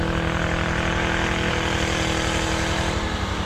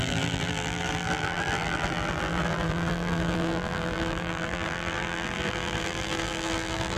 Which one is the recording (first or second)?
first